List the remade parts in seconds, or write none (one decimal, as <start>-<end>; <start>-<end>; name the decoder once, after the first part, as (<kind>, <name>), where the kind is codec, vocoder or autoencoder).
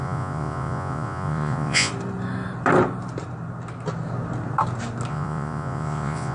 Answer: 0.0-1.9 (vocoder, Vocos); 5.1-6.3